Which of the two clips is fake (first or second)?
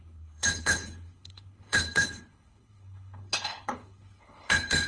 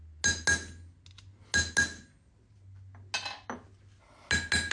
first